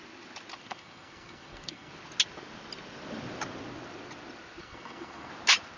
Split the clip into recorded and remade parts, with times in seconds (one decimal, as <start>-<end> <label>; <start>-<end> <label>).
0.0-0.6 recorded; 0.6-1.9 remade; 1.9-4.6 recorded; 4.6-5.3 remade; 5.3-5.8 recorded